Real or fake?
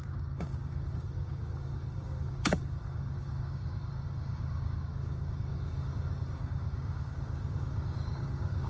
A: fake